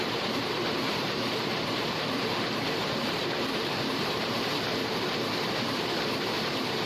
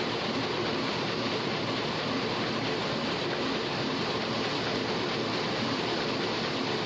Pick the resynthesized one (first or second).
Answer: first